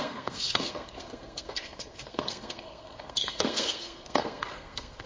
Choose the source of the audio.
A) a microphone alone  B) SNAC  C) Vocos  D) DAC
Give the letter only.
B